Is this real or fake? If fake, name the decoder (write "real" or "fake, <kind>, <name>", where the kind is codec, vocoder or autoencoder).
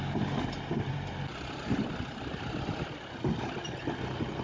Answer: fake, vocoder, BigVGAN v2